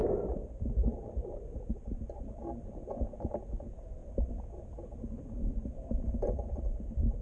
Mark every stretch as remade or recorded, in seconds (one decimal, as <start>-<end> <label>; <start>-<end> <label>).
0.0-3.0 remade; 3.0-4.0 recorded; 4.0-6.6 remade; 6.6-7.2 recorded

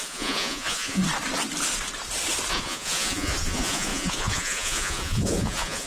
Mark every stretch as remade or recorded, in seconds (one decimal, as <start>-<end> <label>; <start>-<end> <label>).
0.0-1.0 remade; 1.0-2.5 recorded; 2.5-5.9 remade

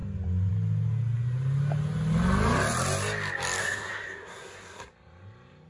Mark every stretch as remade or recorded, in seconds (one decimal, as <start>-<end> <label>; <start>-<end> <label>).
0.0-3.6 recorded; 3.6-4.9 remade; 4.9-5.7 recorded

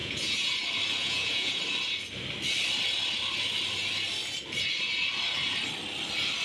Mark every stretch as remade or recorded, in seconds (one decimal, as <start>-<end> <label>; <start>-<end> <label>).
0.0-0.5 remade; 0.5-1.0 recorded; 1.0-1.6 remade; 1.6-6.4 recorded

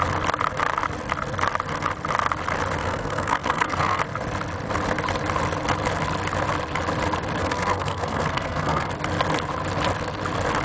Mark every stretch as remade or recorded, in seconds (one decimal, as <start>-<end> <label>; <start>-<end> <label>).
0.0-2.8 recorded; 2.8-4.0 remade; 4.0-7.4 recorded; 7.4-8.9 remade; 8.9-10.6 recorded

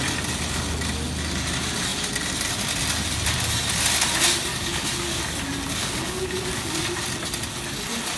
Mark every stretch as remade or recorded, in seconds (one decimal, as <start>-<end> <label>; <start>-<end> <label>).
0.0-4.5 recorded; 4.5-5.2 remade; 5.2-5.8 recorded; 5.8-6.8 remade; 6.8-8.2 recorded